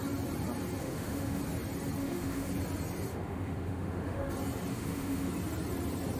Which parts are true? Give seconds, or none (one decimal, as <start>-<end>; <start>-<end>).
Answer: 0.0-0.8; 1.4-2.0; 2.5-3.1; 4.3-4.7; 5.3-6.2